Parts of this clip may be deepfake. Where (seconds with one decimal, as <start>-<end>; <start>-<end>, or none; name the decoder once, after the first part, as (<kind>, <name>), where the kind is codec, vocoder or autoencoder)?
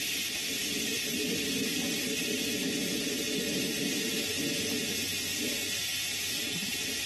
none